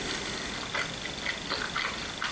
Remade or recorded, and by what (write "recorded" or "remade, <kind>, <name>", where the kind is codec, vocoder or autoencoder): recorded